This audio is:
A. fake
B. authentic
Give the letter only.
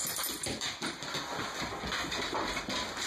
B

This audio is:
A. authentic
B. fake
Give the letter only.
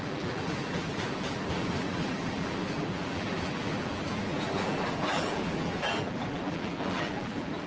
B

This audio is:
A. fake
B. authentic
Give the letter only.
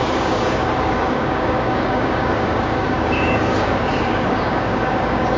A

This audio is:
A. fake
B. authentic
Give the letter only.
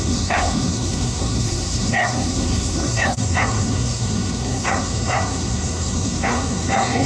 A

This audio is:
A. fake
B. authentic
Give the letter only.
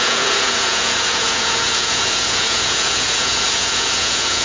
A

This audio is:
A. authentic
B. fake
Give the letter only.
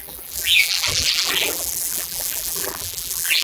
B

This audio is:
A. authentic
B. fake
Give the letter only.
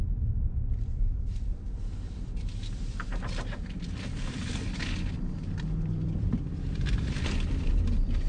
B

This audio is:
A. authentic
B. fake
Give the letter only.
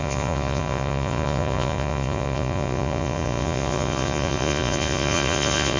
B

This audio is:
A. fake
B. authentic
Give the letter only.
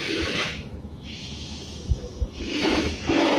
A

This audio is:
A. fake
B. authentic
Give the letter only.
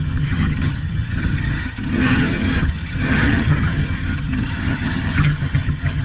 A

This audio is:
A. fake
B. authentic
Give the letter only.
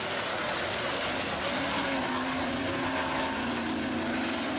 B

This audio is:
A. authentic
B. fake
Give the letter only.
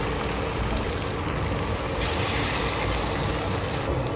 A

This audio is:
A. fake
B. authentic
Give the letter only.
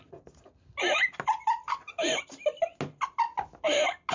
B